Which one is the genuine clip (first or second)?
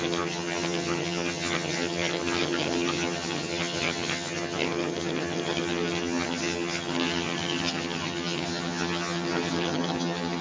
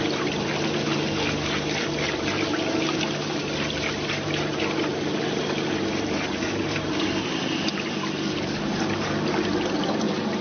second